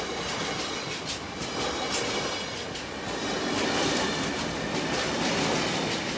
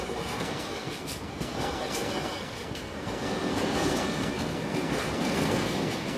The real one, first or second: first